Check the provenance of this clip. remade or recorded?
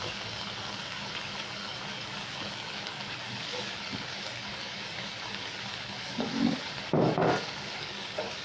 remade